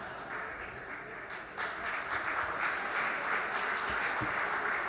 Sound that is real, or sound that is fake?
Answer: real